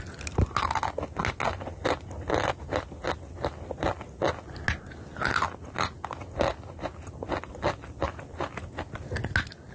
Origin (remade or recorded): recorded